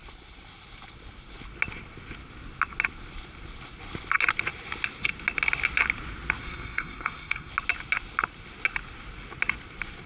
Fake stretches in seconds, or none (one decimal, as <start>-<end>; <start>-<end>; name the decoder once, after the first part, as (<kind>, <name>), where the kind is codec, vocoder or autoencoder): 6.4-7.5 (codec, SNAC)

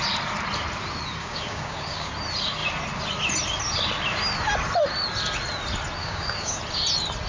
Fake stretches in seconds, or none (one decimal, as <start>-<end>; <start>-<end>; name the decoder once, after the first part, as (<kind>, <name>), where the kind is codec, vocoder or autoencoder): 1.2-2.1 (codec, DAC); 6.0-6.6

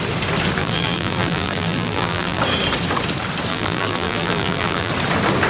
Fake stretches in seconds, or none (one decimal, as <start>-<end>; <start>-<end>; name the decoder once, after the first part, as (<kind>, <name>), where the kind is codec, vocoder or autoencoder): 0.6-2.4 (vocoder, BigVGAN v2); 3.5-4.9

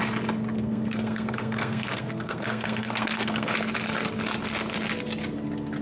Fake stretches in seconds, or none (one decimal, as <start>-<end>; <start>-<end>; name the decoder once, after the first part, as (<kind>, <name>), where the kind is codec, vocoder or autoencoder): 0.6-3.5 (codec, SNAC)

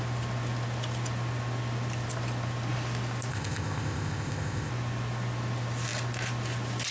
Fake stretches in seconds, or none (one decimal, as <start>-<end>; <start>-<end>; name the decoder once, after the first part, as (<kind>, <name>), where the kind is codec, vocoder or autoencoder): 3.3-4.7 (codec, ZipCodec)

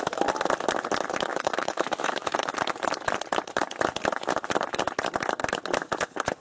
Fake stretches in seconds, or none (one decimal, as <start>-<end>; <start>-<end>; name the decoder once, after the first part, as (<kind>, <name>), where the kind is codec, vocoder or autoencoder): 1.3-2.5 (autoencoder, DAC-VAE)

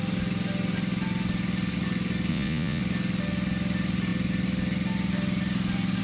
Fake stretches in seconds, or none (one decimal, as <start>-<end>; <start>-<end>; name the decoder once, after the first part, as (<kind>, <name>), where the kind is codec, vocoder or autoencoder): 2.3-2.8 (vocoder, Vocos)